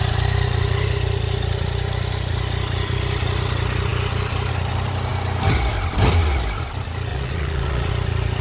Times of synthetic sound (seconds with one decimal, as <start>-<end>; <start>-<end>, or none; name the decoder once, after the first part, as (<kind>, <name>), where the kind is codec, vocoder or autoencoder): 7.1-7.9 (vocoder, Vocos)